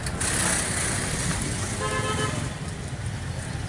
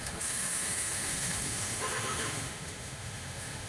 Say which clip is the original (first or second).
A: first